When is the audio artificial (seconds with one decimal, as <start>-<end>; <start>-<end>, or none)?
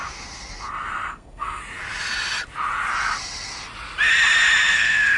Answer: 1.1-1.6; 4.7-5.2